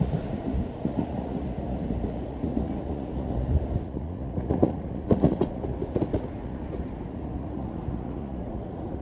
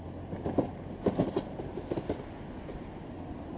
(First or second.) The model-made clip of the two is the first